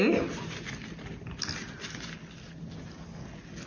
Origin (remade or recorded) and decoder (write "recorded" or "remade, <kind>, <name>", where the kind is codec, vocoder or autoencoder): recorded